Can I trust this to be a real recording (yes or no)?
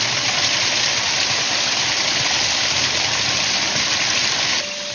yes